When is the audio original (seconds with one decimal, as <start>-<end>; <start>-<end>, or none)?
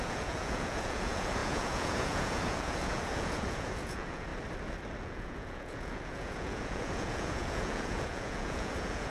4.3-5.0